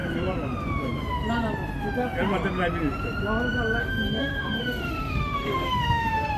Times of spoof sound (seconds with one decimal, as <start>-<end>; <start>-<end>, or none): 3.8-6.4